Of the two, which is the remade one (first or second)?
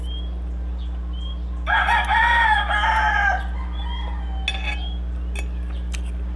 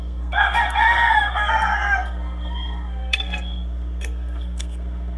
second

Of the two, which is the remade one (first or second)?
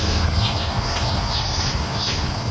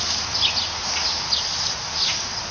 first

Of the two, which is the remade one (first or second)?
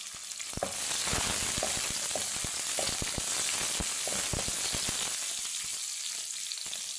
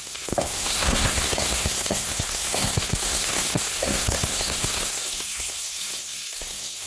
second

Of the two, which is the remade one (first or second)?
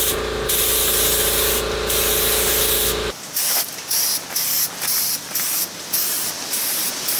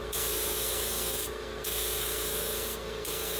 second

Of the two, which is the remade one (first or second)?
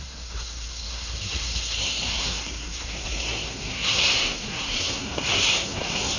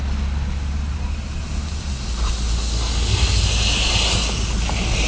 first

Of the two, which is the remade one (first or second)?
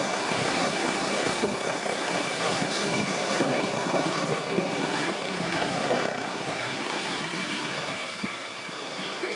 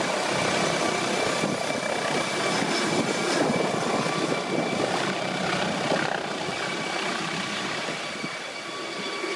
first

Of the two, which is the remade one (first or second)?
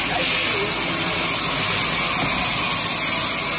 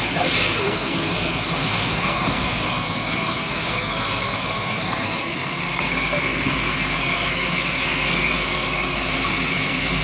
second